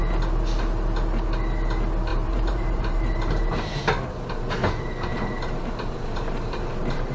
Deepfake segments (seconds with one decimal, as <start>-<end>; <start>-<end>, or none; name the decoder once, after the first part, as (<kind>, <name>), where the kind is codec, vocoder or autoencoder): 2.1-3.8 (vocoder, BigVGAN v2); 5.1-7.1